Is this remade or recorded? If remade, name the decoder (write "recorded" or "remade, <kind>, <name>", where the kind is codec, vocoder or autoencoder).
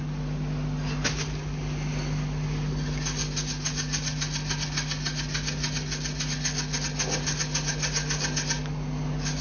recorded